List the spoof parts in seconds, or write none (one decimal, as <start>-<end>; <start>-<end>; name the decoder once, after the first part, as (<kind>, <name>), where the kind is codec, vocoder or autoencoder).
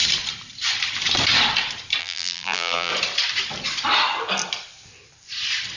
2.0-2.9 (vocoder, BigVGAN v2)